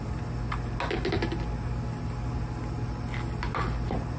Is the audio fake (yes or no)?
no